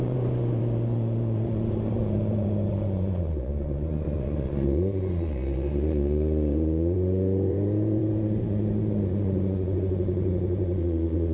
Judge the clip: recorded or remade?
remade